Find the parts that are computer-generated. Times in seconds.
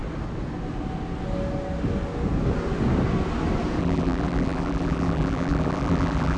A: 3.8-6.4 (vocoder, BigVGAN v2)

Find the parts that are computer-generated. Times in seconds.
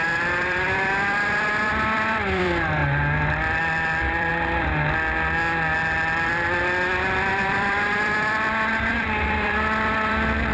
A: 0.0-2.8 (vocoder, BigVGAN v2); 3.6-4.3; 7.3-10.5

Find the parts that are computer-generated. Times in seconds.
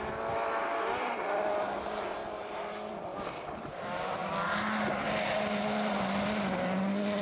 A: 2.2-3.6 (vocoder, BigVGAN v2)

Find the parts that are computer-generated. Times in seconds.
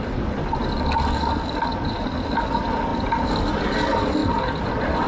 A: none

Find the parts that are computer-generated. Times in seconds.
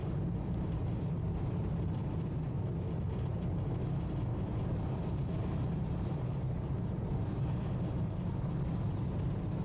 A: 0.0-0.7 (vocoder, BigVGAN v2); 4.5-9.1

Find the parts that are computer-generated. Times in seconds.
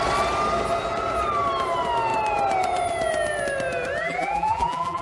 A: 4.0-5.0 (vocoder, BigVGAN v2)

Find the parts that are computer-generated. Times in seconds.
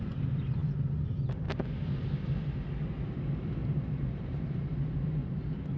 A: 3.6-4.7 (vocoder, BigVGAN v2); 5.2-5.8